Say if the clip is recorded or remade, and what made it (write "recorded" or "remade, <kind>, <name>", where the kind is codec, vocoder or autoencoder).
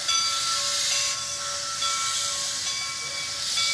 recorded